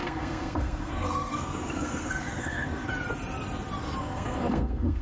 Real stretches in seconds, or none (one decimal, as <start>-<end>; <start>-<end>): 2.9-4.0